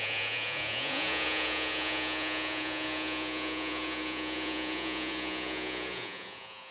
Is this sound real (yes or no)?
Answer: no